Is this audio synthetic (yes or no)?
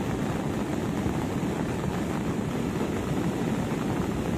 no